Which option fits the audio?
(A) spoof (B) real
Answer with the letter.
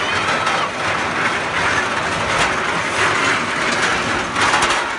B